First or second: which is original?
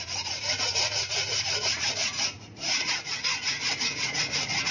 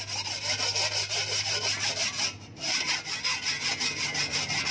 second